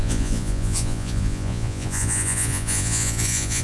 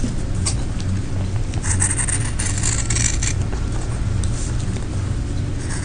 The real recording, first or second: second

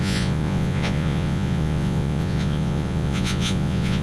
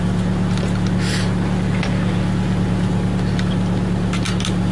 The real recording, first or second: second